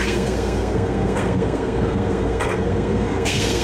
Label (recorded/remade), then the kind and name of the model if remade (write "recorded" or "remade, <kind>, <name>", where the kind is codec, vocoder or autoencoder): remade, codec, SNAC